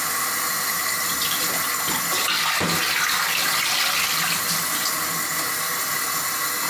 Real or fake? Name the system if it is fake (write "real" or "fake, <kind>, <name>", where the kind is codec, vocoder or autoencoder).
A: real